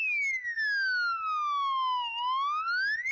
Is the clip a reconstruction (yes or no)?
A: no